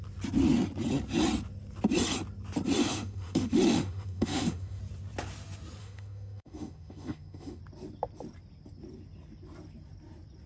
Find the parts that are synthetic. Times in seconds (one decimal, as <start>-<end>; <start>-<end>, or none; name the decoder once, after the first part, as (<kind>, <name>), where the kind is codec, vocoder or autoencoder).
2.8-4.8 (autoencoder, DAC-VAE); 5.8-7.6